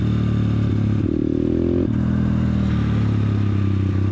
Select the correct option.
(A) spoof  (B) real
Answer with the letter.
B